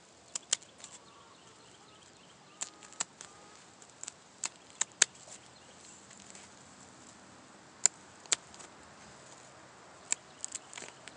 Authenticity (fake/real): real